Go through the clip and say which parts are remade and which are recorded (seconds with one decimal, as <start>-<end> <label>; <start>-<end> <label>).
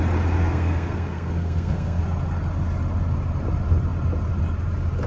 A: 0.0-0.4 recorded; 0.4-2.0 remade; 2.0-5.1 recorded